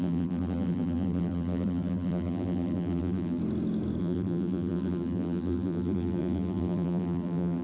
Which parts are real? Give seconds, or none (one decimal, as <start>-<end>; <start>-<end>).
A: 3.4-4.0